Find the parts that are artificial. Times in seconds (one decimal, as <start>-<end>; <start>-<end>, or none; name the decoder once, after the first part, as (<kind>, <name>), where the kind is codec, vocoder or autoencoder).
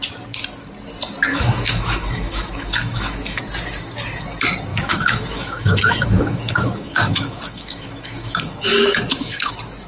1.3-3.4 (autoencoder, DAC-VAE); 4.7-9.5